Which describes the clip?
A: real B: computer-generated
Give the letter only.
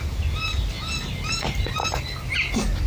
A